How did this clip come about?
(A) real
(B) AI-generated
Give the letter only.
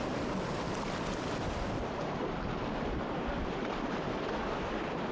A